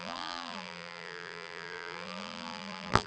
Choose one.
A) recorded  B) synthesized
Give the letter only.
B